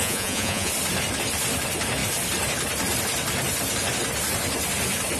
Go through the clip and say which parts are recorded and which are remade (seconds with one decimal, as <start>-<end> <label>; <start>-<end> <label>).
0.0-0.7 remade; 0.7-5.2 recorded